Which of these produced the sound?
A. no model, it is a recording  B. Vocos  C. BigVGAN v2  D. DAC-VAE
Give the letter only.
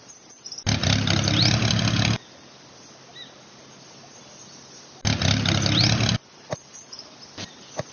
A